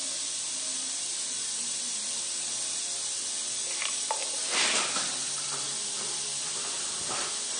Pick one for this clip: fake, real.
fake